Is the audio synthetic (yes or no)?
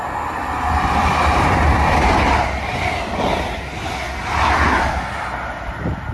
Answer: no